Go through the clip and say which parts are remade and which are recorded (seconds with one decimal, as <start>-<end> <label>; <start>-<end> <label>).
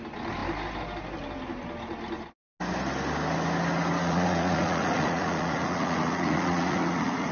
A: 0.0-4.0 recorded; 4.0-7.3 remade